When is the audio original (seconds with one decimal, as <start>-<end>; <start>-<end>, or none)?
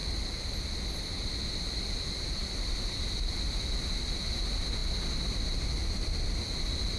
0.0-7.0